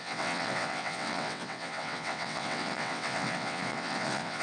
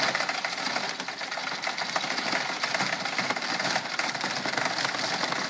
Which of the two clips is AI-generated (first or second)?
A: first